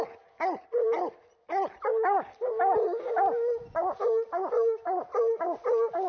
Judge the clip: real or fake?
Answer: real